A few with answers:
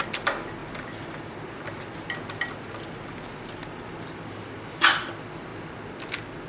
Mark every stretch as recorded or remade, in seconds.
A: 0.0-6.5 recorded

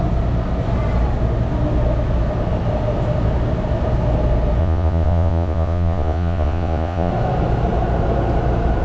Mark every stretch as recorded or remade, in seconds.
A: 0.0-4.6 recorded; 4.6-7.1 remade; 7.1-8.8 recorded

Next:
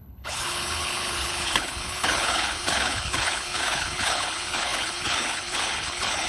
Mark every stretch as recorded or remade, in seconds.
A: 0.0-6.3 remade

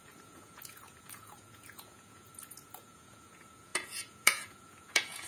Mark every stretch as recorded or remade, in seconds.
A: 0.0-5.3 remade

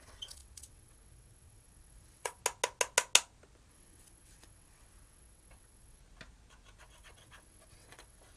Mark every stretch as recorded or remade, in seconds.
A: 0.0-2.4 remade; 2.4-3.7 recorded; 3.7-6.0 remade; 6.0-6.8 recorded; 6.8-8.4 remade

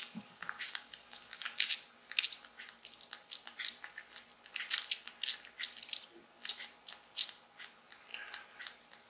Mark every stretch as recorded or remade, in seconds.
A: 0.0-1.7 remade; 1.7-9.1 recorded

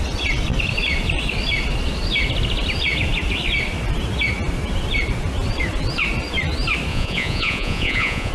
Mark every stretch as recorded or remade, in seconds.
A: 0.0-6.9 recorded; 6.9-8.3 remade

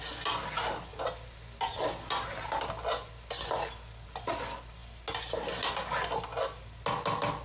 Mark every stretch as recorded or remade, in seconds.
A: 0.0-7.4 recorded